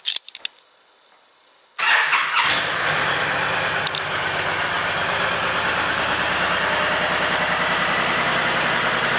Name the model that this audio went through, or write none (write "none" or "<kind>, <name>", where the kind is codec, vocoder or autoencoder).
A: none